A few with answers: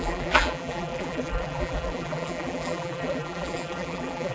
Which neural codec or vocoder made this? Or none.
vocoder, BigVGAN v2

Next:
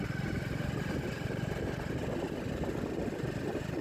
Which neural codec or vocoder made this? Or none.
none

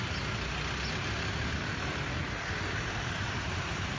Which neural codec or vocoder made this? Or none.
none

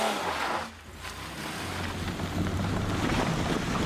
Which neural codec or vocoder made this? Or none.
none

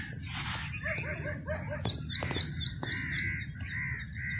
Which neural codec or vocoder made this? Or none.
none